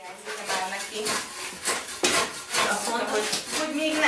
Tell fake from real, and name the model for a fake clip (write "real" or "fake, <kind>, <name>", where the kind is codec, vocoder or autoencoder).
real